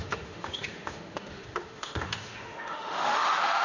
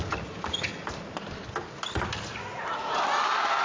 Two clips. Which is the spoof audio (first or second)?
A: first